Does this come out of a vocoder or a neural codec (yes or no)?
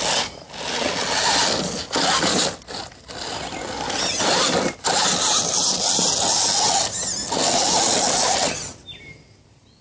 no